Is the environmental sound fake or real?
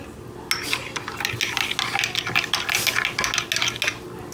real